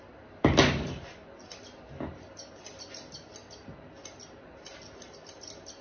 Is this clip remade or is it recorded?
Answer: recorded